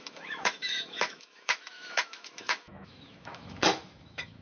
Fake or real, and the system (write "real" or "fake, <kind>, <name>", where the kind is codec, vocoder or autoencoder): fake, autoencoder, DAC-VAE